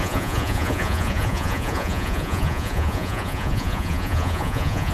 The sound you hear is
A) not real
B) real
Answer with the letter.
A